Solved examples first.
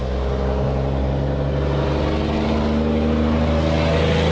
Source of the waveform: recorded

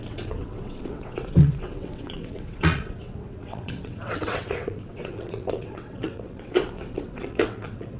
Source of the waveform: remade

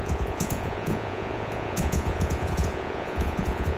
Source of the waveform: remade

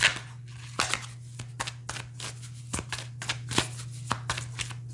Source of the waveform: recorded